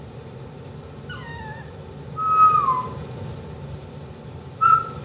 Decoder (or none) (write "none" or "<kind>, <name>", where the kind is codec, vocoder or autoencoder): none